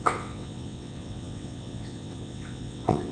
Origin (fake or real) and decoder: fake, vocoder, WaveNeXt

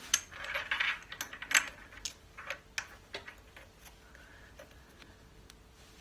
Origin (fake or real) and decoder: real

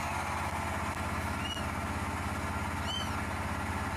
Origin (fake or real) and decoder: real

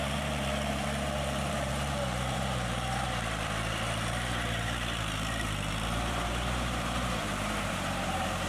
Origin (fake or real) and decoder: fake, vocoder, BigVGAN v2